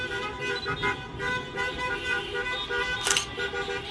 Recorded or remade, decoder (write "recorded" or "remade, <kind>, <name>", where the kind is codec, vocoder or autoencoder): recorded